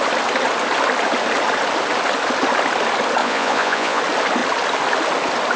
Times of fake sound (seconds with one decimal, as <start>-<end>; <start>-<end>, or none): 3.2-4.0